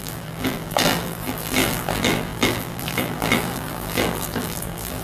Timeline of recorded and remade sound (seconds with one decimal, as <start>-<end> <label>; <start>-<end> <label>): 0.0-5.0 remade

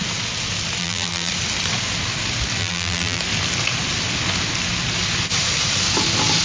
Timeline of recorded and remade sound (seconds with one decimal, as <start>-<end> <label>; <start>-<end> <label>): 0.0-0.8 recorded; 0.8-1.3 remade; 1.3-2.6 recorded; 2.6-3.2 remade; 3.2-6.4 recorded

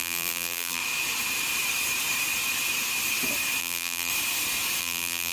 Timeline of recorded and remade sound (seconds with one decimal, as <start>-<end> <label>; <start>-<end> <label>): 0.0-0.8 remade; 0.8-3.6 recorded; 3.6-4.1 remade; 4.1-4.8 recorded; 4.8-5.3 remade

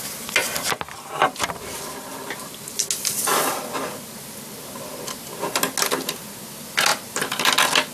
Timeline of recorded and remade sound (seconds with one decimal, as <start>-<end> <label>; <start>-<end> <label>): 0.0-6.9 recorded; 6.9-7.9 remade

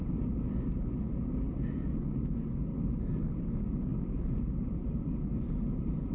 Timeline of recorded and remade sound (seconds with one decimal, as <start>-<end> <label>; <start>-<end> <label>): 0.0-3.9 recorded; 3.9-5.1 remade; 5.1-6.1 recorded

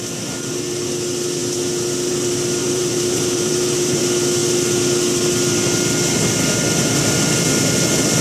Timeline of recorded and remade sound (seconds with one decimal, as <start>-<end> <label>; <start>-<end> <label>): 0.0-2.6 recorded; 2.6-4.0 remade; 4.0-8.2 recorded